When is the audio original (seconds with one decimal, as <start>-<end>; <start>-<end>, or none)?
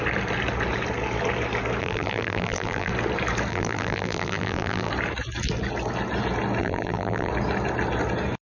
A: 0.0-1.8; 2.9-3.5; 4.9-6.6; 7.3-8.5